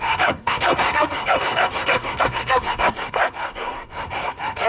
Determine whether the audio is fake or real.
fake